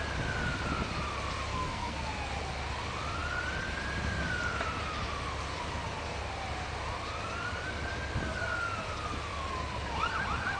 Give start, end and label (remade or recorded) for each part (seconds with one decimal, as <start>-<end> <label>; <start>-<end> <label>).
0.0-1.5 recorded; 1.5-2.1 remade; 2.1-10.6 recorded